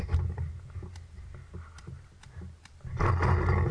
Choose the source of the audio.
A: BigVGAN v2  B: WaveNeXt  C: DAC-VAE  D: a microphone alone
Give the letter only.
D